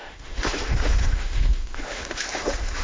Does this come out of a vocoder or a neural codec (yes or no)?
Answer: yes